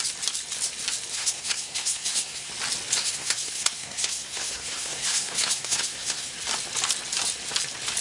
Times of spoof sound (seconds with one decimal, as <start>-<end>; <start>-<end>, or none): 1.1-2.5; 3.0-6.3